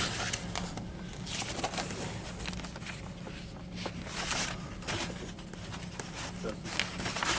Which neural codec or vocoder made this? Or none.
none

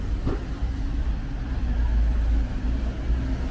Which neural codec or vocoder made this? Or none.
none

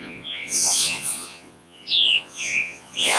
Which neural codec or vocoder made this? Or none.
vocoder, Vocos